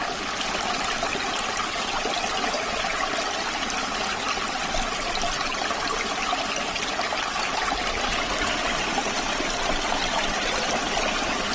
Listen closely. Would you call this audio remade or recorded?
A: recorded